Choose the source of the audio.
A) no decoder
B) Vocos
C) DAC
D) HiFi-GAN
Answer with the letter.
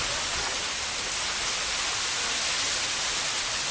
A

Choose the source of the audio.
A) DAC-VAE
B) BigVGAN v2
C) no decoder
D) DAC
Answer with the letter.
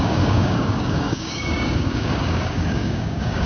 D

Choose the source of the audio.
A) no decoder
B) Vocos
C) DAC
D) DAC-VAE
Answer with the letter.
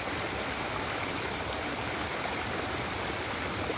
A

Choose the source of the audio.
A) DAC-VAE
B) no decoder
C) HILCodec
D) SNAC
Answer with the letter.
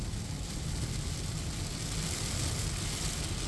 B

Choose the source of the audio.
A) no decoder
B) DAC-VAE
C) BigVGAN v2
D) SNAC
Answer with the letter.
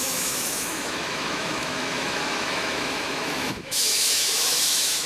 B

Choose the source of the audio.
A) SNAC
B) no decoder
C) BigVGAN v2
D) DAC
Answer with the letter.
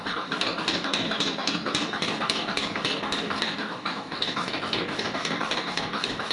D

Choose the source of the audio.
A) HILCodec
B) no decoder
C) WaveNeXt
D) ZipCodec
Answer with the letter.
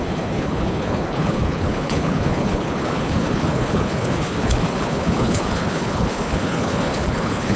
A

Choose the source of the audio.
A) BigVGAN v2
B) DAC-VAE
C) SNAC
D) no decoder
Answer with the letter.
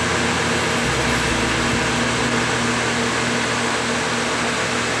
D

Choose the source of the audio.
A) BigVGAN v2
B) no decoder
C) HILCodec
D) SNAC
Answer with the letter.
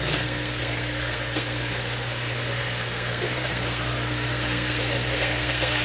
D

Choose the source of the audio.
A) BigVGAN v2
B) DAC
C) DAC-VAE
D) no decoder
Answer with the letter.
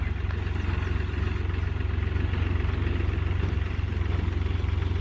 D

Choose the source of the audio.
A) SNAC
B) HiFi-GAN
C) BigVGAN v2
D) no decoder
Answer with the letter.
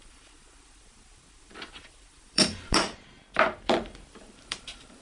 C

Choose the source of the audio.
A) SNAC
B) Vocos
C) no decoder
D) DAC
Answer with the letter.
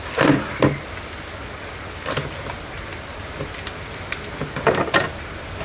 C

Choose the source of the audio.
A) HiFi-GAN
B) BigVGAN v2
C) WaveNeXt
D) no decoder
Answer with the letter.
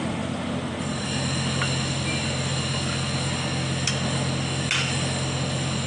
D